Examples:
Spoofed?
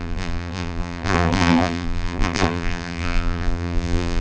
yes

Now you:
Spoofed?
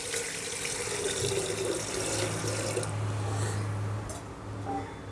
no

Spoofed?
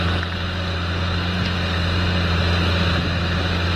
no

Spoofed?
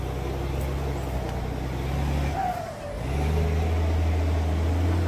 no